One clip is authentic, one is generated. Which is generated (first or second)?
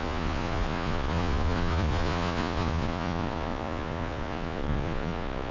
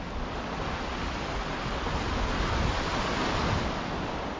first